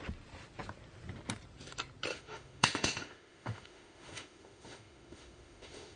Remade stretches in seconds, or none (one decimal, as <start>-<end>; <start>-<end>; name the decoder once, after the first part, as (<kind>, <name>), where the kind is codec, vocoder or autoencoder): 2.1-6.0 (autoencoder, DAC-VAE)